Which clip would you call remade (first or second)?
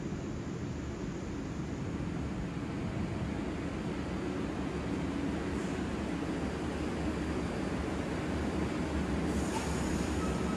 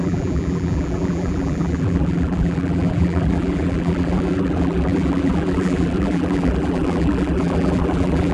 second